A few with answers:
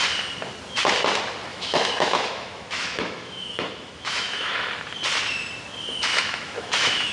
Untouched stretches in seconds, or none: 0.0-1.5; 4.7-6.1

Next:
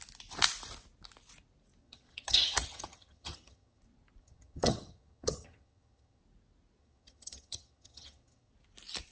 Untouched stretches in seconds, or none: 0.0-1.8; 3.8-4.2; 6.2-6.8; 8.5-9.1